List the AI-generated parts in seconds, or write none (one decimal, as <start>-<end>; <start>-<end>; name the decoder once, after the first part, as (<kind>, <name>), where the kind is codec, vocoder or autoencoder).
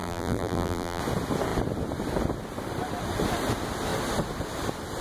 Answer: 0.0-1.0 (vocoder, BigVGAN v2)